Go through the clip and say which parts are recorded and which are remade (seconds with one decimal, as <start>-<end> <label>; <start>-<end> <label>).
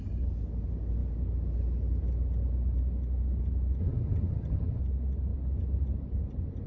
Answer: 0.0-3.8 recorded; 3.8-4.8 remade; 4.8-6.7 recorded